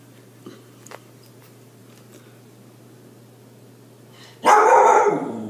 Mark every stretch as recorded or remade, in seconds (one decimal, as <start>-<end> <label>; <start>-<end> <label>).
0.0-1.8 remade; 1.8-5.1 recorded; 5.1-5.5 remade